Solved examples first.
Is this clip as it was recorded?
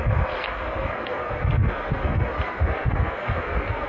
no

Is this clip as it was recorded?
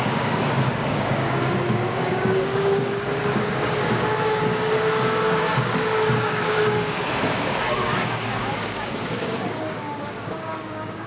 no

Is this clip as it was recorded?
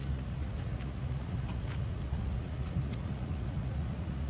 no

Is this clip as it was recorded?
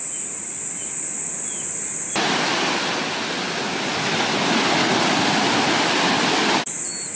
yes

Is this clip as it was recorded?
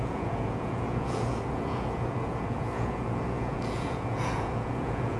no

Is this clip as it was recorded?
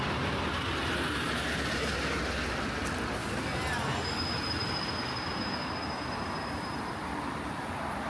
yes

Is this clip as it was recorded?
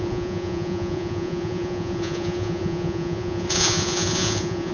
no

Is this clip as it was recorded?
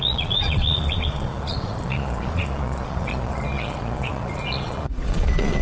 no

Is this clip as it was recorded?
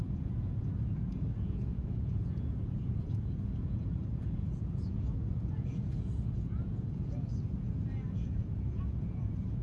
no